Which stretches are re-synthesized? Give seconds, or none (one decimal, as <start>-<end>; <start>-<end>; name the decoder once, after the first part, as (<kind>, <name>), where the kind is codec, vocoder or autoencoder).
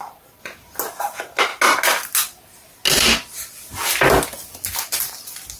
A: none